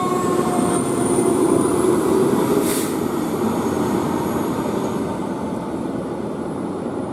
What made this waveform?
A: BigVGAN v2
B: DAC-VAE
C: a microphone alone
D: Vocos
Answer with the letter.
A